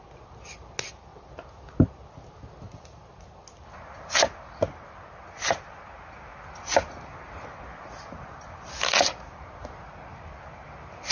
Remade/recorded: recorded